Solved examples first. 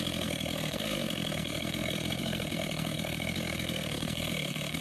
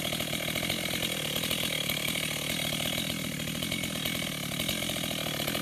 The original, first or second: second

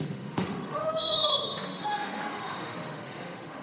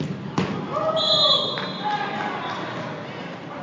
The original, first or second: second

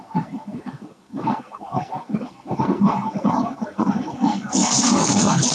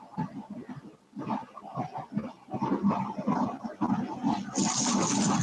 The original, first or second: second